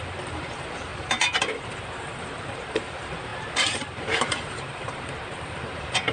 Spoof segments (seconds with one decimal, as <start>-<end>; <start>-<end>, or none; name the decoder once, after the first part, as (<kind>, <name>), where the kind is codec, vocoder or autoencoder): 0.0-0.9 (vocoder, BigVGAN v2); 2.2-6.1